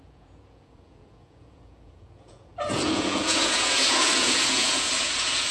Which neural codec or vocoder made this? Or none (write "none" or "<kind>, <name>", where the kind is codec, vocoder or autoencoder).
vocoder, Vocos